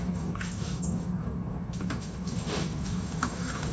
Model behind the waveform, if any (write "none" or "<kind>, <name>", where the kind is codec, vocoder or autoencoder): codec, DAC